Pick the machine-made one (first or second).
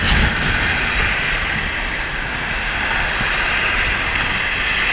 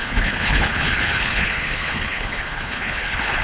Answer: second